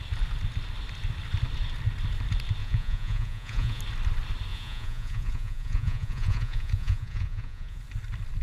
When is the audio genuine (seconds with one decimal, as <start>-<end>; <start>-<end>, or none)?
0.0-2.6; 3.8-4.5; 7.8-8.4